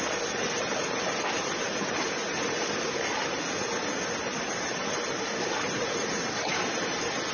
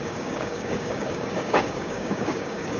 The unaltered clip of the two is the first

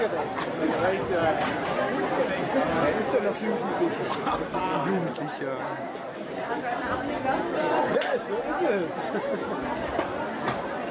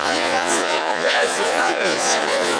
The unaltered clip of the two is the first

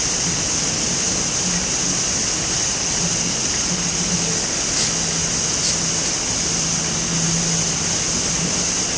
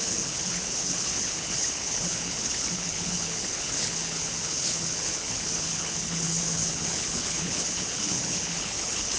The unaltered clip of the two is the first